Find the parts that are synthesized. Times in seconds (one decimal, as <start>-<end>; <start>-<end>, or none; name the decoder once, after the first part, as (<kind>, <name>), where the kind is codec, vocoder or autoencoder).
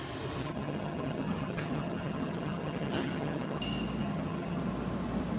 0.4-3.6 (vocoder, HiFi-GAN); 4.0-4.6